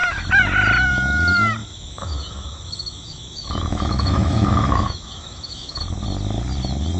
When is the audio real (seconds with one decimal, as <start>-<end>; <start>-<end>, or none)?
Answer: 0.0-1.6; 5.8-7.0